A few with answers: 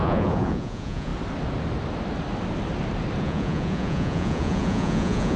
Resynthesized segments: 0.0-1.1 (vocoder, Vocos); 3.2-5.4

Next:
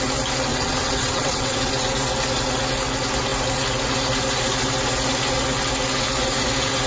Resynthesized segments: 0.5-1.7 (vocoder, WaveNeXt)

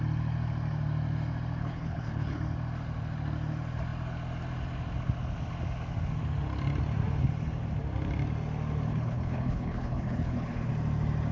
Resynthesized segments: 1.6-2.4 (codec, HILCodec); 8.9-10.7

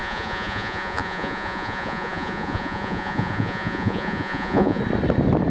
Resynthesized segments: 0.0-4.8 (vocoder, Vocos)

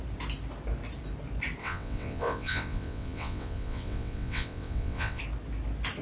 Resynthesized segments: 1.6-5.2 (vocoder, WaveNeXt)

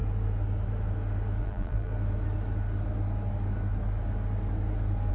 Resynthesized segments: 1.4-1.9 (vocoder, BigVGAN v2)